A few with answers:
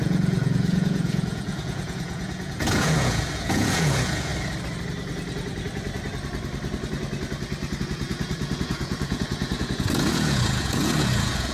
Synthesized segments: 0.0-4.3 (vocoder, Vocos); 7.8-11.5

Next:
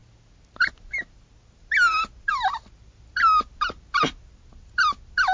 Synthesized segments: none